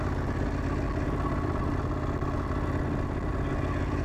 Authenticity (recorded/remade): recorded